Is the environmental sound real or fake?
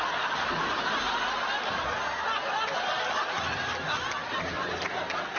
real